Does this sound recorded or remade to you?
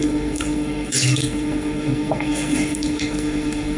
remade